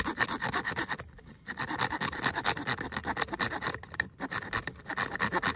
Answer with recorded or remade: recorded